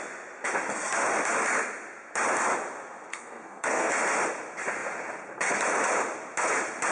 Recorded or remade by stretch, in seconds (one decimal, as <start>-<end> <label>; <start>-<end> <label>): 0.0-3.1 recorded; 3.1-3.9 remade; 3.9-6.9 recorded